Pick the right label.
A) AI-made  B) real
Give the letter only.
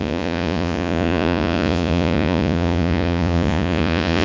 A